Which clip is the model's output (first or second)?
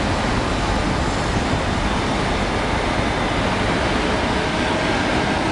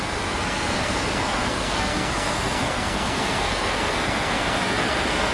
second